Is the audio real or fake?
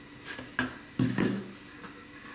real